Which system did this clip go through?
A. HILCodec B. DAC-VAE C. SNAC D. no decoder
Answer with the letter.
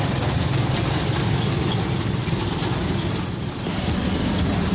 D